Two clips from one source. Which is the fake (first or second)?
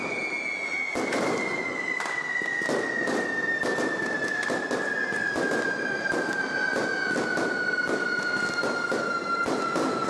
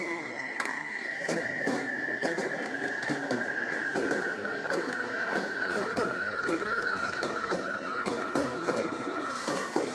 second